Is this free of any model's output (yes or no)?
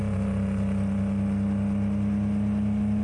yes